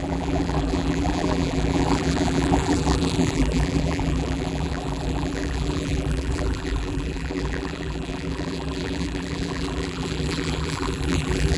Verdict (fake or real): fake